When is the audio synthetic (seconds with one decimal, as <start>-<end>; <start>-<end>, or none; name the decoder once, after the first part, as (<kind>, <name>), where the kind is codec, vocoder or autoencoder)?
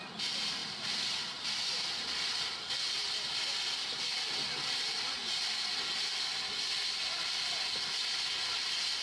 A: none